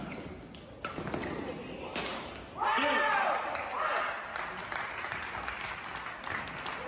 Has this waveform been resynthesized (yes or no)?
no